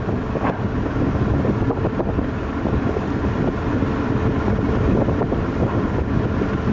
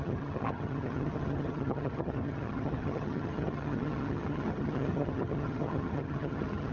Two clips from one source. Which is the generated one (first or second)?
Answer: second